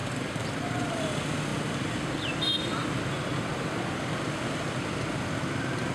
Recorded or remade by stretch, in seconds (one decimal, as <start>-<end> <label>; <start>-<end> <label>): 0.0-1.0 remade; 1.0-5.9 recorded